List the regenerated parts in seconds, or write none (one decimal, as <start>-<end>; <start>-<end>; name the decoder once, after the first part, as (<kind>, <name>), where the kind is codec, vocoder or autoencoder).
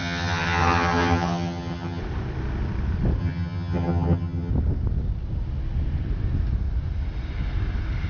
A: 0.0-2.0 (vocoder, HiFi-GAN); 3.2-4.5